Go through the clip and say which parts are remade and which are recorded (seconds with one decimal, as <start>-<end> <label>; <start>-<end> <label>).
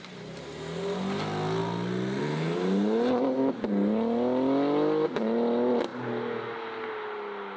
0.0-7.6 recorded